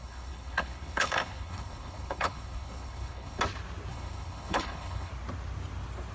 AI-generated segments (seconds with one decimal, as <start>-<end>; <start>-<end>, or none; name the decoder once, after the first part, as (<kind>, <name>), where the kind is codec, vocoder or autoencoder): 0.0-3.4 (codec, HILCodec); 3.9-5.1